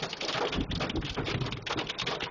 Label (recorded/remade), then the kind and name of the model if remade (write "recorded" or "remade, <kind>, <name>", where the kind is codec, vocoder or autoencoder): recorded